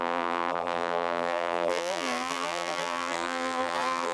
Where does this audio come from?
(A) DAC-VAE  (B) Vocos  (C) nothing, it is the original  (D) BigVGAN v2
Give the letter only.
D